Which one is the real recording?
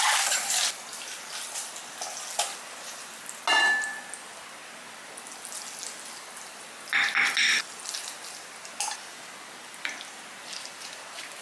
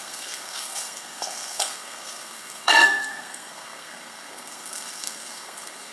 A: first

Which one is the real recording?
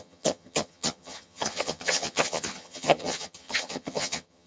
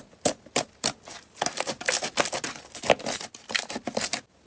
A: second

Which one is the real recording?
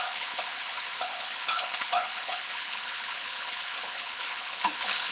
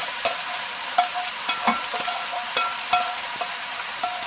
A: second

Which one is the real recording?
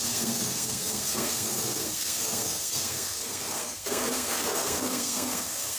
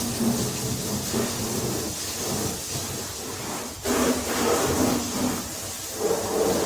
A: second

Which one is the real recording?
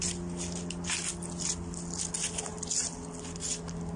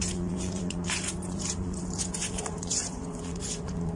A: first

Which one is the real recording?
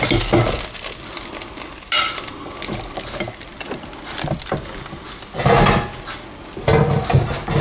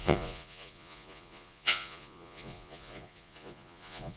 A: first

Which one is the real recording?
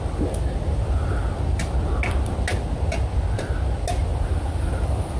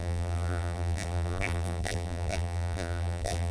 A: first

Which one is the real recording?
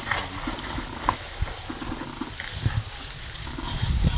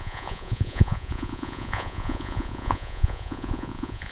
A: first